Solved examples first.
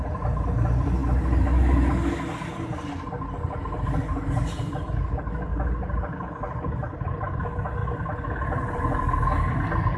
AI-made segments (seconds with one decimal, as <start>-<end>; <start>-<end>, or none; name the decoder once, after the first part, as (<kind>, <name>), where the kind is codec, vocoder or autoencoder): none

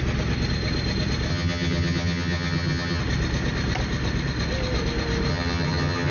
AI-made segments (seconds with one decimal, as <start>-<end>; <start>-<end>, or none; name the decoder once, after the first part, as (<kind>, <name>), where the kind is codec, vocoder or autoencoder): 1.3-3.0 (vocoder, HiFi-GAN); 5.3-6.1

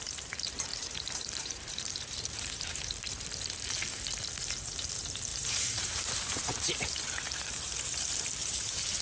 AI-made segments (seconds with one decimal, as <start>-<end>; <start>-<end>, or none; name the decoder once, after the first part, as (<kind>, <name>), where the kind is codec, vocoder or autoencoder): 0.7-3.4 (vocoder, BigVGAN v2); 5.3-6.9; 8.4-9.0

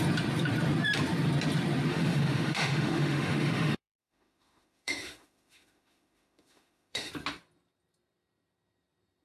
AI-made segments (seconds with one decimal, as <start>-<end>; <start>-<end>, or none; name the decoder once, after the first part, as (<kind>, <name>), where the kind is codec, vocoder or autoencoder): 1.9-7.1 (autoencoder, DAC-VAE)

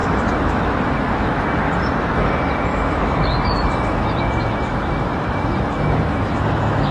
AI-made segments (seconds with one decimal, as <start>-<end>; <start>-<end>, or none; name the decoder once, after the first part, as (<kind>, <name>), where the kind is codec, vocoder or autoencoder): 0.0-1.4 (autoencoder, DAC-VAE); 2.7-6.9

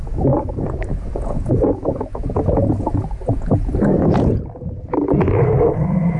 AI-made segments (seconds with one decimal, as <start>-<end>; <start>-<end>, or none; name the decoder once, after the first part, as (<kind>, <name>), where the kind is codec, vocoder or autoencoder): 0.9-4.4 (vocoder, Vocos)

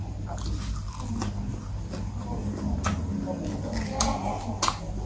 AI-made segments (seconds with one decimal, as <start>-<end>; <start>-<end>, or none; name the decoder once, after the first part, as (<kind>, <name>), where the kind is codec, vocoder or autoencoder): none

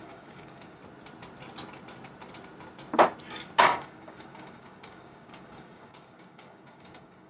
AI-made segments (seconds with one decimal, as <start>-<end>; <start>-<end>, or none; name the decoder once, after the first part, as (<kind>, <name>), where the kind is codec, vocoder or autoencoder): 0.0-0.8 (codec, DAC); 3.6-7.3